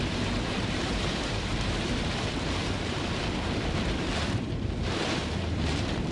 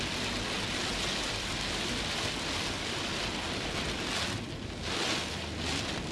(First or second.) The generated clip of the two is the first